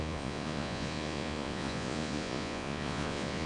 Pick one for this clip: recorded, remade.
remade